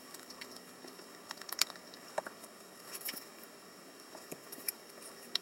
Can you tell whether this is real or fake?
fake